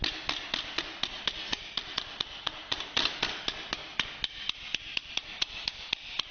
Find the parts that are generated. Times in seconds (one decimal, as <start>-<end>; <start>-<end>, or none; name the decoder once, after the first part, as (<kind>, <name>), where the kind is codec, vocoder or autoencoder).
none

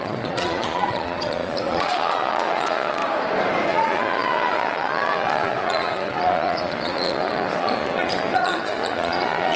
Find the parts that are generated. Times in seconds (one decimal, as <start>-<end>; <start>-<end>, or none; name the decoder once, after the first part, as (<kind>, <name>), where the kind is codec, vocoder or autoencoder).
0.0-3.0 (vocoder, Vocos); 3.7-9.6

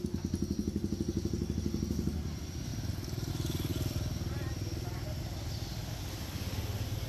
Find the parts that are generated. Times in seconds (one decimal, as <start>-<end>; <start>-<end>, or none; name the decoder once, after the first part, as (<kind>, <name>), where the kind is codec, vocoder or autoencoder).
none

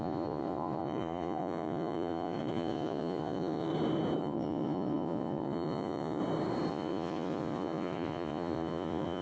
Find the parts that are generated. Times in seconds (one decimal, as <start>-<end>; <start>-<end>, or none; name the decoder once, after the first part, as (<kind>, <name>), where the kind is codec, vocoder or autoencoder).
0.0-3.7 (vocoder, Vocos); 4.2-6.2; 6.7-9.2

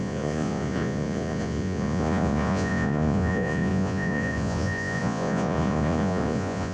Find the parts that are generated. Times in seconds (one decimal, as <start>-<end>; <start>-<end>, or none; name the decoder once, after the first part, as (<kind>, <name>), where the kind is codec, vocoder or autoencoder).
0.0-6.7 (vocoder, Vocos)